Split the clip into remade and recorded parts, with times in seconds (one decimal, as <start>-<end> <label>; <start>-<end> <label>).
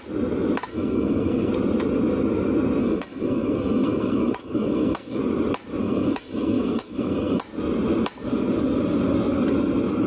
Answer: 0.0-0.7 recorded; 0.7-1.5 remade; 1.5-2.8 recorded; 2.8-5.2 remade; 5.2-5.8 recorded; 5.8-7.4 remade; 7.4-10.1 recorded